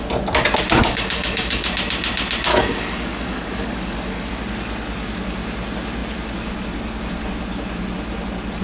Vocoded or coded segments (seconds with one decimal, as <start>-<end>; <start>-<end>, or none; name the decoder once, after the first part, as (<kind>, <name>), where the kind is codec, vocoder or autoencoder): 0.8-1.7 (codec, DAC); 2.5-4.3